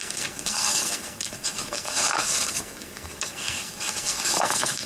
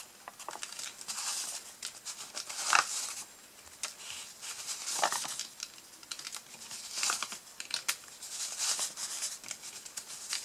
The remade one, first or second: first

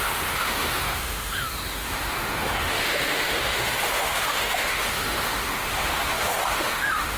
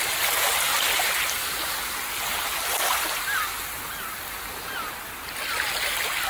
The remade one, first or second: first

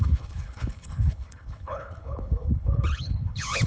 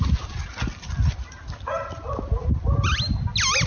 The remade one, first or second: first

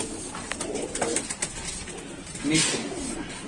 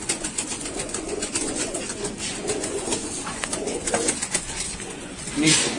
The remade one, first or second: second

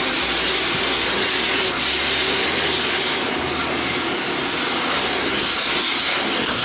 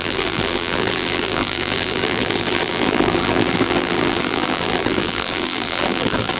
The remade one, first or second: second